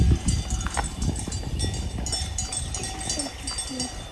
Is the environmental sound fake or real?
real